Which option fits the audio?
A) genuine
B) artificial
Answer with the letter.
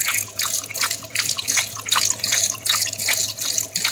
B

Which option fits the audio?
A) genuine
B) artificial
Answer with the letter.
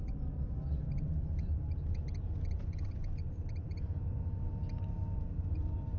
B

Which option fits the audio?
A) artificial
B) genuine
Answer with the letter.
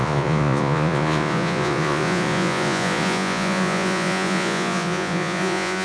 A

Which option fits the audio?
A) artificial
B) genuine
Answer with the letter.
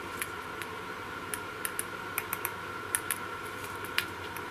B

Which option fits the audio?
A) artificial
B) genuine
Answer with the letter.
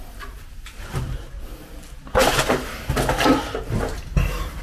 B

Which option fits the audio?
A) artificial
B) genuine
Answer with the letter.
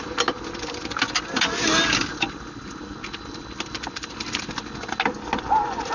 B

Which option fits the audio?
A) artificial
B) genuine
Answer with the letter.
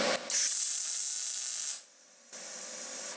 B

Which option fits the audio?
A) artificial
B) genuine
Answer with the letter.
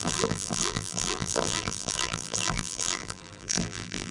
A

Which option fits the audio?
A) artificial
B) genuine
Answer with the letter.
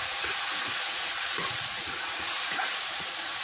A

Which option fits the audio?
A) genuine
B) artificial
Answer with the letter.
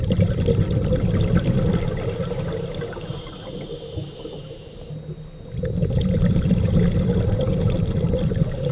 A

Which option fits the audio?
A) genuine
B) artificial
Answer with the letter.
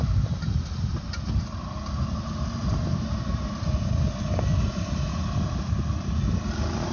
A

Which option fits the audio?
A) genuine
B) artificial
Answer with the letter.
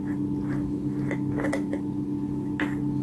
A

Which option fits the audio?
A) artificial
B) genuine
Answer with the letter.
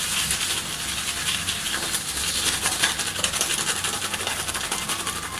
B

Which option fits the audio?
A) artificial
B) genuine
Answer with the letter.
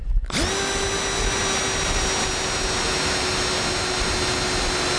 B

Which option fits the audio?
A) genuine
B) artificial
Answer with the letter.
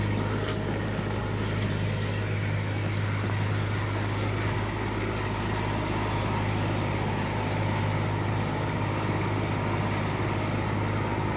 A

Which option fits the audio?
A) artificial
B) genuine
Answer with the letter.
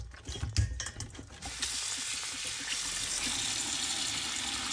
B